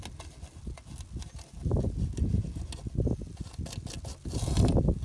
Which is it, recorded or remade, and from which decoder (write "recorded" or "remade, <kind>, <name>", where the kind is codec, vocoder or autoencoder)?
recorded